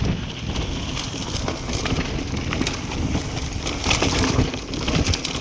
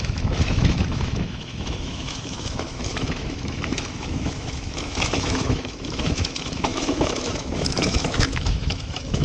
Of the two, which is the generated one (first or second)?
second